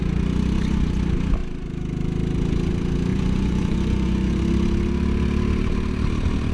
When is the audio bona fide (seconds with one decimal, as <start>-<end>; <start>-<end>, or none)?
0.0-3.1; 4.4-6.5